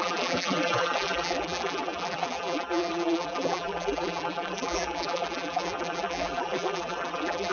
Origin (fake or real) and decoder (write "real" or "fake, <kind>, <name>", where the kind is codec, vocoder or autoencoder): fake, vocoder, BigVGAN v2